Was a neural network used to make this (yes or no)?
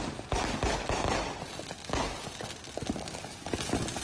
no